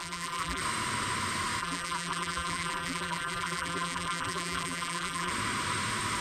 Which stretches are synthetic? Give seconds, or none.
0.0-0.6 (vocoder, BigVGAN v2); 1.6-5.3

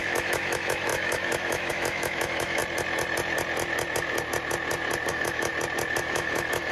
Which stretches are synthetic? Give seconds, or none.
0.0-2.6 (autoencoder, DAC-VAE); 5.1-5.5; 6.0-6.7

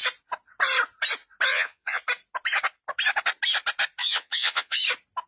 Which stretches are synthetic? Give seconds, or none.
1.5-2.0 (vocoder, Vocos); 4.0-4.8

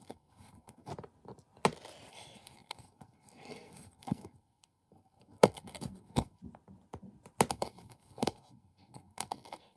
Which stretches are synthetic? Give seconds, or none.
0.0-0.9 (codec, SNAC); 2.1-6.4; 7.5-9.8

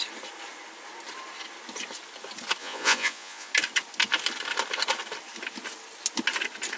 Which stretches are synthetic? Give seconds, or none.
2.6-3.5 (vocoder, Vocos)

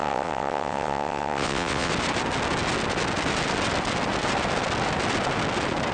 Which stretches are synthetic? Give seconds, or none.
0.0-1.9 (vocoder, WaveNeXt)